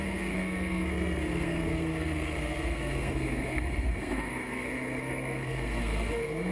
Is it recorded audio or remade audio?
remade